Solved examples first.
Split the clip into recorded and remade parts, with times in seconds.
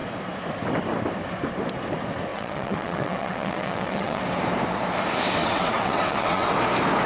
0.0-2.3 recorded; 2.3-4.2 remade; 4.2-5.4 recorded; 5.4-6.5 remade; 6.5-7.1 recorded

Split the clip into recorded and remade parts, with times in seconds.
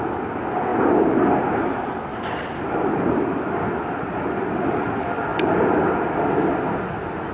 0.0-2.1 recorded; 2.1-3.3 remade; 3.3-7.3 recorded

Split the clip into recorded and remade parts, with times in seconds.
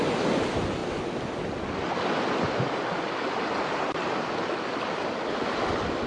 0.0-6.1 recorded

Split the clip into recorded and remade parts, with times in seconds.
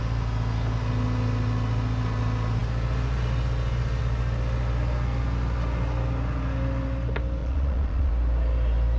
0.0-7.4 recorded; 7.4-8.1 remade; 8.1-9.0 recorded